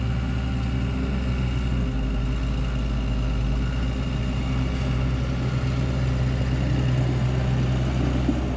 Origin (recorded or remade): recorded